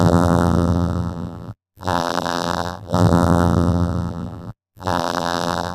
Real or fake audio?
fake